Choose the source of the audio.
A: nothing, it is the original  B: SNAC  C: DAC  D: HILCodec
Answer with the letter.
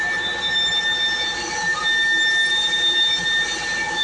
A